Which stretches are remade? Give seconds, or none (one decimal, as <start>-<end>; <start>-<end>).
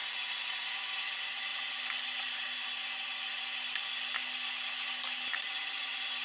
0.0-0.6